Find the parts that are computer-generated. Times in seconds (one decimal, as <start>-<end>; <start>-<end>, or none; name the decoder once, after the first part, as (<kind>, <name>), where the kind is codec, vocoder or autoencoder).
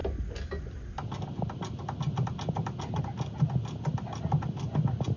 none